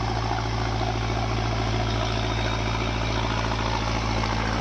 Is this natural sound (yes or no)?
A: yes